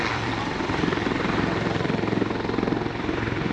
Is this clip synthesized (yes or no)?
yes